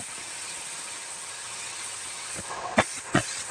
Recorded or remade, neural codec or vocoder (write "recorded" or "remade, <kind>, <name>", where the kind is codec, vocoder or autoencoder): remade, vocoder, WaveNeXt